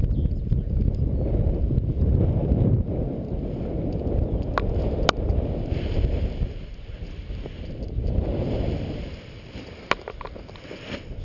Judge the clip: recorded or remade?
recorded